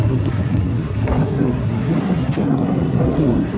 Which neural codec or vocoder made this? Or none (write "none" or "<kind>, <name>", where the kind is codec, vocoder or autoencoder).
codec, SNAC